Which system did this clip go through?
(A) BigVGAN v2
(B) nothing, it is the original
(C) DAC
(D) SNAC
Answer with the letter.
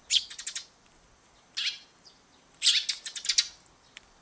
B